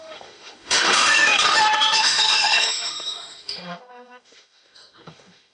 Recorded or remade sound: remade